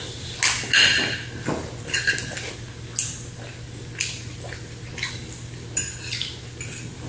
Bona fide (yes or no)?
yes